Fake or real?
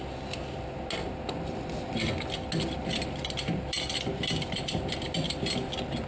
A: real